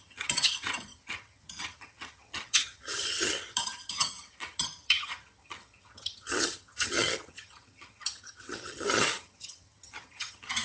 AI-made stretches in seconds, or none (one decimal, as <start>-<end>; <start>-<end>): 0.0-10.6

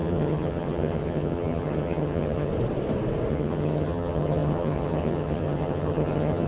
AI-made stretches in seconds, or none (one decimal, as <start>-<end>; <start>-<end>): 0.0-2.5; 3.3-6.5